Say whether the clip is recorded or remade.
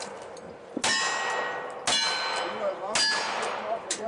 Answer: recorded